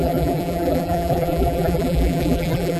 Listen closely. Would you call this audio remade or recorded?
remade